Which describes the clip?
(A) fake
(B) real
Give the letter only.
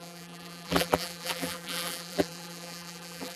A